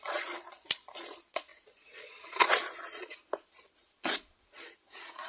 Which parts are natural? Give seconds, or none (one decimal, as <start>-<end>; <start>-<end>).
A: none